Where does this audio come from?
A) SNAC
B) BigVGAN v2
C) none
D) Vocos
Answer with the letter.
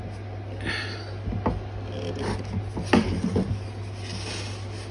C